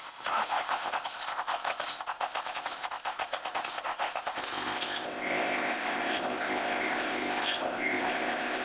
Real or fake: fake